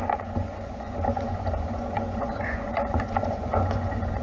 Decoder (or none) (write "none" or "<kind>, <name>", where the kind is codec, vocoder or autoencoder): vocoder, Vocos